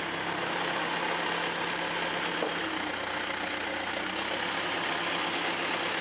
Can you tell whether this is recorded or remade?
recorded